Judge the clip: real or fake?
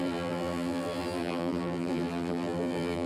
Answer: fake